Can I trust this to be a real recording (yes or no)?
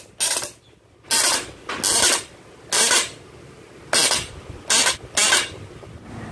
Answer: yes